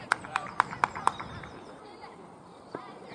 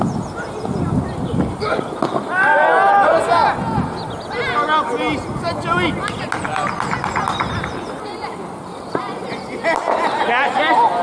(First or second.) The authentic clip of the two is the second